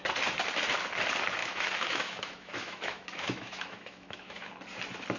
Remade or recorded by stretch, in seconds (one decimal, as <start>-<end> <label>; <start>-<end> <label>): 0.0-1.4 recorded; 1.4-4.5 remade; 4.5-5.2 recorded